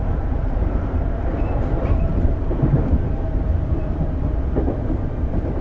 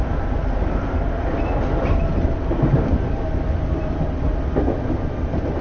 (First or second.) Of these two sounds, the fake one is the first